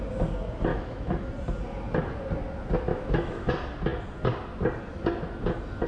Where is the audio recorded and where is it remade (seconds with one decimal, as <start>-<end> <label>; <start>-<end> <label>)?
0.0-0.7 recorded; 0.7-1.3 remade; 1.3-2.9 recorded; 2.9-3.5 remade; 3.5-5.9 recorded